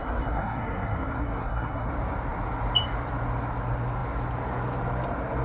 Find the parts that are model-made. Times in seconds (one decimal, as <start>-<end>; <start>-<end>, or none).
0.0-1.9